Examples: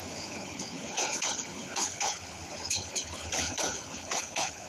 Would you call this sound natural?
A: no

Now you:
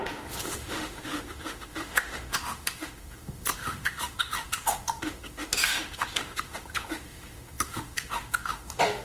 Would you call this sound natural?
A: no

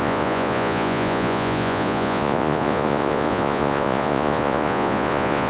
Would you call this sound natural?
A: no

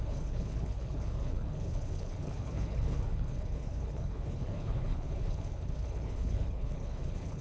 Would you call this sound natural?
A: no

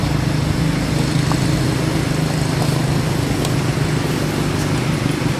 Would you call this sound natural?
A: yes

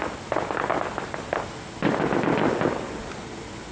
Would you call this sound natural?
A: yes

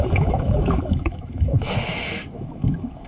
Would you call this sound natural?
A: no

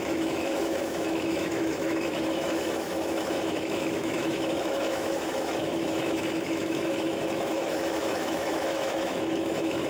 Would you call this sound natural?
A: no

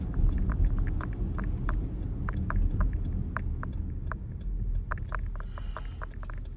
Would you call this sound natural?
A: yes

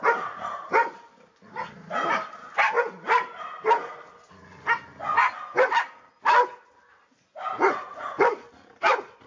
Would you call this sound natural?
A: yes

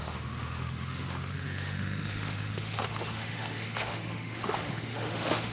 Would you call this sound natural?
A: no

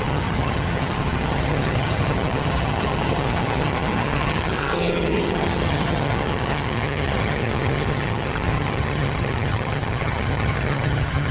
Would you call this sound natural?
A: no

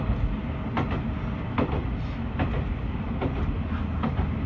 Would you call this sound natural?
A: yes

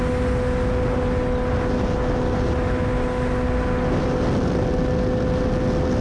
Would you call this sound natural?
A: yes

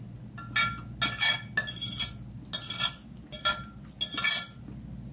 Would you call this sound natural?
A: yes